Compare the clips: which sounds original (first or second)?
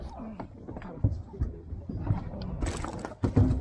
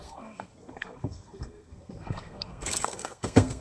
first